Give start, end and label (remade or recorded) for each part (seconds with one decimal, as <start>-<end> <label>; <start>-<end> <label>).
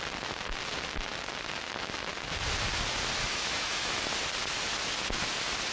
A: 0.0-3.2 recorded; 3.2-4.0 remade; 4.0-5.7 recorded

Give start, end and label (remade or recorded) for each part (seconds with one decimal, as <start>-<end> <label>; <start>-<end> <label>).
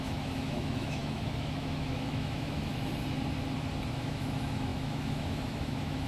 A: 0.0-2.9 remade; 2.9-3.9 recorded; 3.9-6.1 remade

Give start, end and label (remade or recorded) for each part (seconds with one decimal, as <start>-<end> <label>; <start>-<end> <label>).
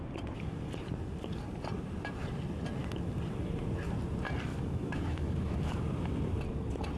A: 0.0-4.5 recorded; 4.5-5.8 remade; 5.8-7.0 recorded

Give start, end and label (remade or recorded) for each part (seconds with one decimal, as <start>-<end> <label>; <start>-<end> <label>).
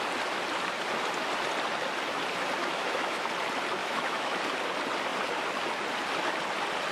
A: 0.0-2.6 recorded; 2.6-3.3 remade; 3.3-3.8 recorded; 3.8-4.4 remade; 4.4-6.9 recorded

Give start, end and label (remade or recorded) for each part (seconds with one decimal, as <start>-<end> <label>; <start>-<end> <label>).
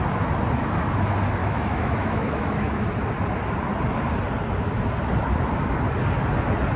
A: 0.0-1.4 recorded; 1.4-2.7 remade; 2.7-6.8 recorded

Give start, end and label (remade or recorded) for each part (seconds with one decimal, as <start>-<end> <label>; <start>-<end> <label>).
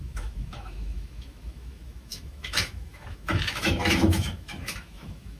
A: 0.0-5.4 remade